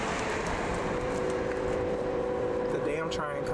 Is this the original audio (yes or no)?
no